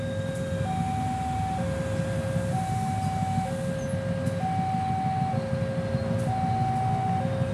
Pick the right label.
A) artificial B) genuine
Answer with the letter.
B